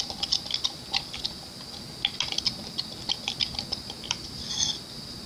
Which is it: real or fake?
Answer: real